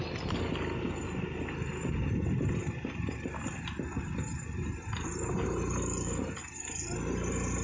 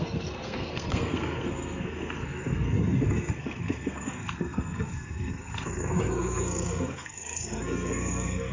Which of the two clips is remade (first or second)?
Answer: second